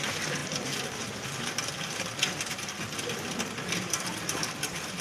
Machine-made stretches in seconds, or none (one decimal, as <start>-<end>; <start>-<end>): 0.0-5.0